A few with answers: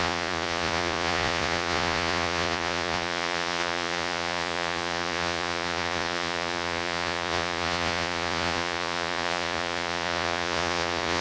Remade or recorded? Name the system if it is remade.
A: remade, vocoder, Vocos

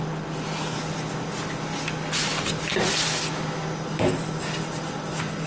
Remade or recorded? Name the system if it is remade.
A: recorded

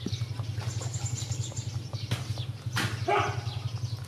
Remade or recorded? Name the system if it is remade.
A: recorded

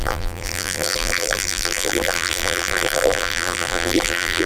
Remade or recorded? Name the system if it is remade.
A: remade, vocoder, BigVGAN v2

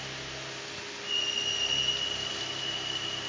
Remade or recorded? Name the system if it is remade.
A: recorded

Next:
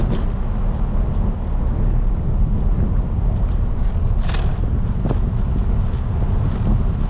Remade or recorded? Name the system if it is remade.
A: recorded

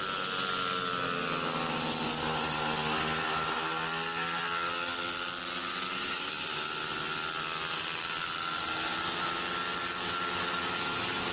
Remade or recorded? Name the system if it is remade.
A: recorded